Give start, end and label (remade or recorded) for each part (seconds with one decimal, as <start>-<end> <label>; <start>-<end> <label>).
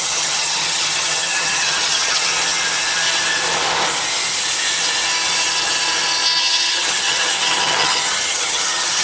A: 0.0-2.3 remade; 2.3-6.4 recorded; 6.4-9.0 remade